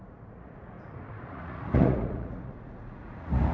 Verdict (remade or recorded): remade